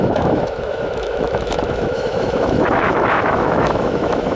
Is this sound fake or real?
fake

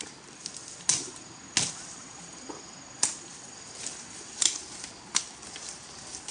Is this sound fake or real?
real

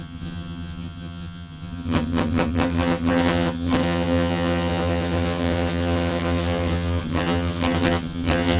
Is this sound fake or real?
fake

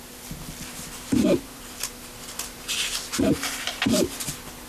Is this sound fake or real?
real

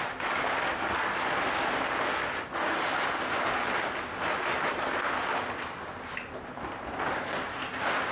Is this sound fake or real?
real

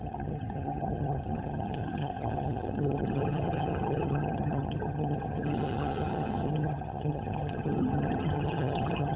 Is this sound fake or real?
fake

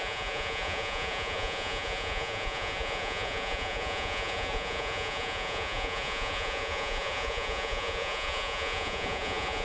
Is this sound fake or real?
fake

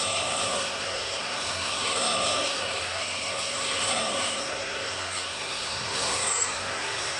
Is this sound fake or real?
fake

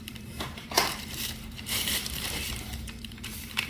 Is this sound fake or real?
fake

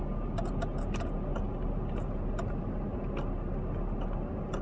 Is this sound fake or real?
real